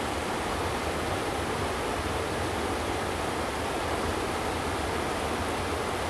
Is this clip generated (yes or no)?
no